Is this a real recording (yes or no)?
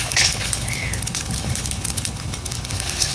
no